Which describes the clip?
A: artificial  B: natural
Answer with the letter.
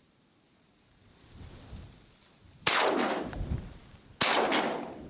B